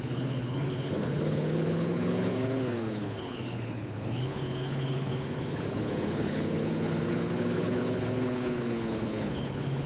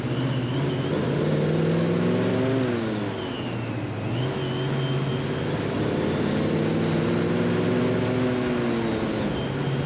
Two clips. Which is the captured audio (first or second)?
second